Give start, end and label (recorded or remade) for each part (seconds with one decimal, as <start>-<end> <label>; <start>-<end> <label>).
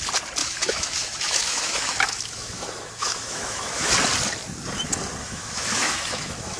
0.0-0.4 recorded; 0.4-4.0 remade; 4.0-5.2 recorded; 5.2-6.6 remade